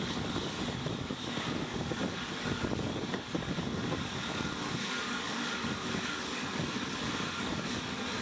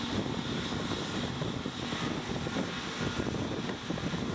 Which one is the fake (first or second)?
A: first